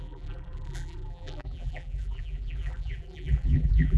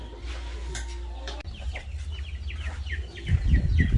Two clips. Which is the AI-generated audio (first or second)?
first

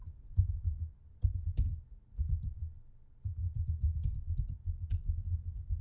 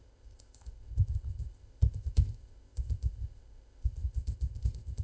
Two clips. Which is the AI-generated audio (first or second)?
second